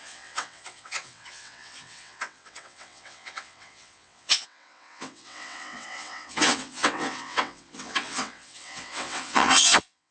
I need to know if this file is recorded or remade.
remade